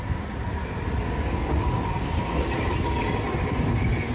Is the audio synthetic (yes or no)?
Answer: no